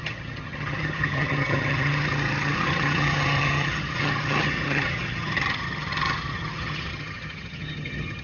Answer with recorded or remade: remade